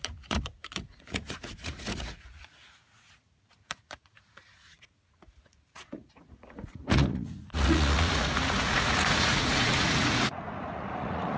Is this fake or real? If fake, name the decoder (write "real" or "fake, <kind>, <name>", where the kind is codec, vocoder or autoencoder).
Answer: fake, vocoder, Vocos